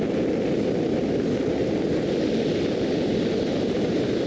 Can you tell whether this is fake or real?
real